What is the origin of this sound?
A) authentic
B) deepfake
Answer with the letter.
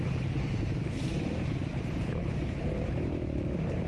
B